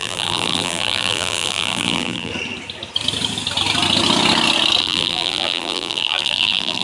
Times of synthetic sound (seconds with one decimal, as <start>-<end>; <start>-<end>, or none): 0.0-2.3; 4.8-6.8